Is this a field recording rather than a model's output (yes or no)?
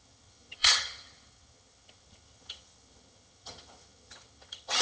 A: no